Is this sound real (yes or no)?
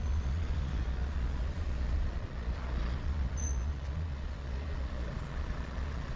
no